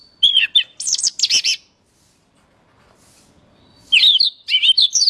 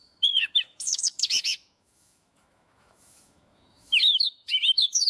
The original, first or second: first